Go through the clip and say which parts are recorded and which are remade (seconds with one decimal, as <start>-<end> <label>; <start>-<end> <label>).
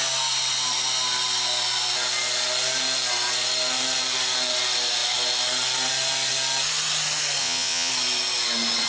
0.0-7.4 recorded; 7.4-7.9 remade; 7.9-8.9 recorded